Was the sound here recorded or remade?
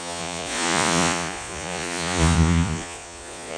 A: remade